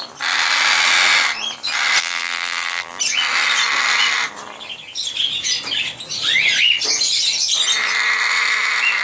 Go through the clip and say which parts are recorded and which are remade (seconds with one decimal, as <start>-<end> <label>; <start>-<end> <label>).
0.0-2.0 recorded; 2.0-3.0 remade; 3.0-9.0 recorded